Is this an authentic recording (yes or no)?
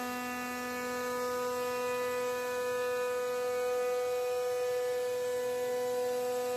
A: yes